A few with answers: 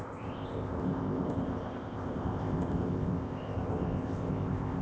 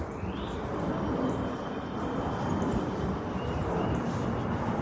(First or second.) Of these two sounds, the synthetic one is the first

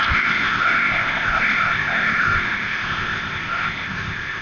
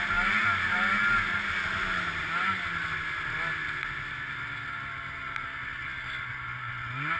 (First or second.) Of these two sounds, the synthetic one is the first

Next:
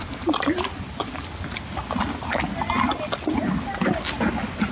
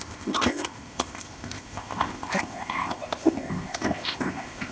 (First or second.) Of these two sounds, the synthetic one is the second